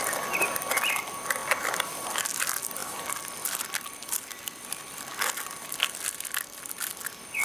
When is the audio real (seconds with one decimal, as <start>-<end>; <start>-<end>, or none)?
0.0-7.4